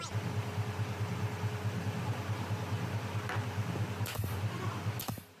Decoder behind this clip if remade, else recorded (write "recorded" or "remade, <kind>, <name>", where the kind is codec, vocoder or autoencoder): recorded